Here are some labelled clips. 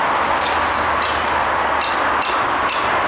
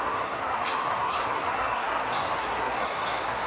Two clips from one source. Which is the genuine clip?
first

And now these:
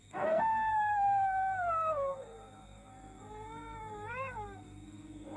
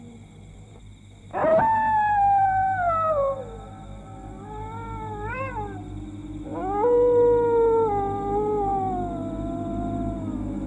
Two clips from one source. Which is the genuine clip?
second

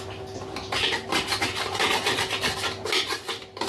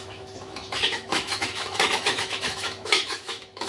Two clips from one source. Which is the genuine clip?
first